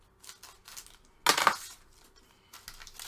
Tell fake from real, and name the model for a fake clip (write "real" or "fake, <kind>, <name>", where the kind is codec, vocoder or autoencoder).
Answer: real